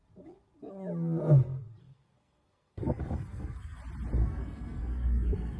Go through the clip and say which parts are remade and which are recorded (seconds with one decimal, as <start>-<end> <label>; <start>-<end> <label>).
0.0-1.8 recorded; 1.8-3.8 remade; 3.8-4.2 recorded; 4.2-5.6 remade